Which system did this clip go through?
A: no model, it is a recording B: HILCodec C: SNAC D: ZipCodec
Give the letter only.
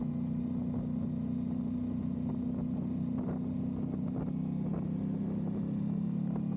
A